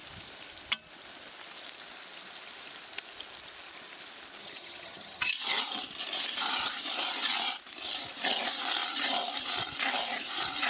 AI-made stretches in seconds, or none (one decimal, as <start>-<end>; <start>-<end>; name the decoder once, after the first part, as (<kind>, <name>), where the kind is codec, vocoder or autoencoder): 4.4-5.3 (vocoder, HiFi-GAN)